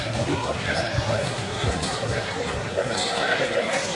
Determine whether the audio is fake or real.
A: fake